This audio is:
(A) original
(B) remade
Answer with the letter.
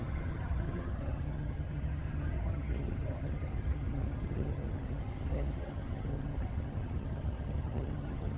B